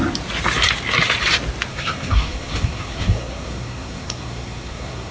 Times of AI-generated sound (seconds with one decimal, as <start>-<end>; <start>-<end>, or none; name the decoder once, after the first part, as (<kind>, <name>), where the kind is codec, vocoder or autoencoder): 1.7-5.1 (codec, SNAC)